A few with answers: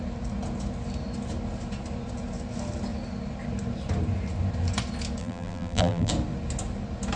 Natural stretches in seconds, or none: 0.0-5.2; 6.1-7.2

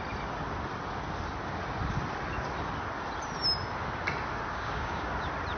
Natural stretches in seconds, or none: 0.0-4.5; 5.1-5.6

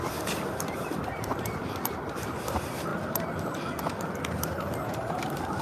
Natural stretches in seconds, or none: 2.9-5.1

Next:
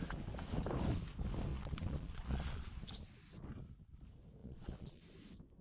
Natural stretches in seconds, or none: 0.0-1.5; 2.7-4.4; 5.0-5.6

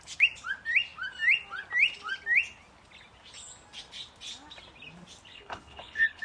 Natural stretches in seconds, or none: 0.0-5.3

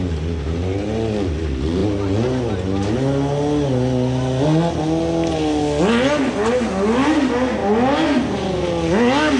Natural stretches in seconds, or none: 0.0-9.4